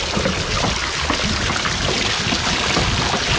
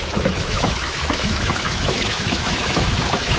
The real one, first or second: first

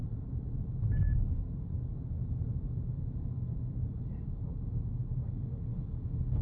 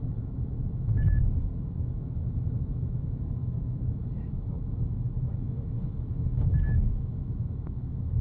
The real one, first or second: first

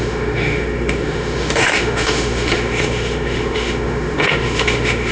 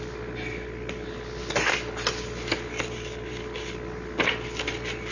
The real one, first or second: second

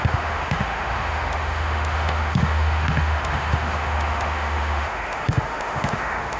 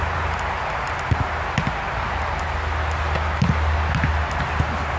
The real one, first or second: second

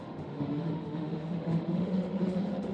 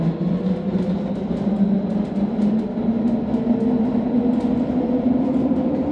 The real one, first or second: second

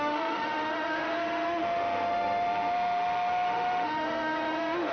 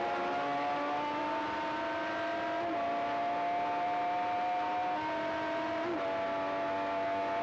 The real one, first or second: second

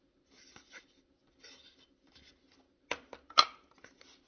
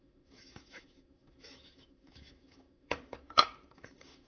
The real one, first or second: first